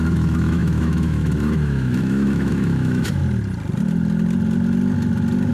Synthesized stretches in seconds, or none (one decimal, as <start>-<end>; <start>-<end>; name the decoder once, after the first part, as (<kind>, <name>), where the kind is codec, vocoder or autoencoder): 0.0-3.2 (autoencoder, DAC-VAE)